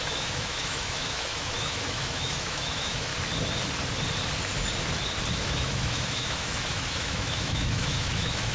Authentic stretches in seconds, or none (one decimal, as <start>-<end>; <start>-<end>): 3.1-5.3